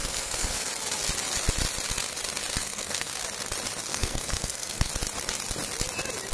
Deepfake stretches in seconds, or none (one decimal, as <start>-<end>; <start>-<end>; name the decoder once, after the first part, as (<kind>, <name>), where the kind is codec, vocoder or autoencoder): 0.0-0.7 (codec, SNAC); 2.6-3.1; 3.9-4.9